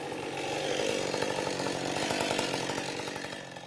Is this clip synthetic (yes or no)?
no